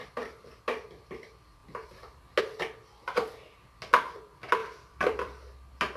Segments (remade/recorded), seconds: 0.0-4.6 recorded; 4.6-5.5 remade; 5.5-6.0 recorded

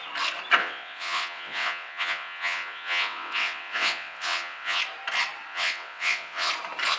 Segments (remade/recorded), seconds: 0.0-0.6 recorded; 0.6-4.8 remade; 4.8-5.5 recorded; 5.5-6.5 remade; 6.5-7.0 recorded

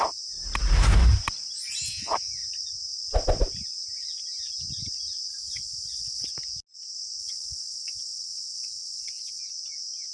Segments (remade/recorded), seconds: 0.0-5.3 recorded; 5.3-6.3 remade; 6.3-7.2 recorded; 7.2-9.4 remade; 9.4-10.1 recorded

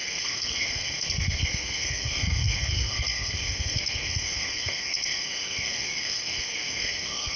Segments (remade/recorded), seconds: 0.0-7.4 remade